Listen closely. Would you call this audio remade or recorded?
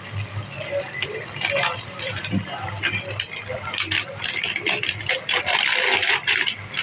recorded